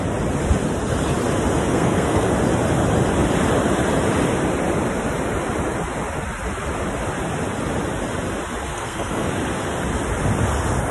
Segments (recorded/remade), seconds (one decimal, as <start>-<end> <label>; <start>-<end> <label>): 0.0-1.7 recorded; 1.7-2.3 remade; 2.3-8.7 recorded; 8.7-9.3 remade; 9.3-10.9 recorded